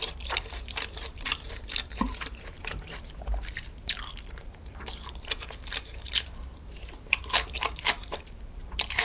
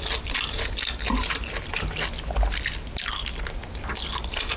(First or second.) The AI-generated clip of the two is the first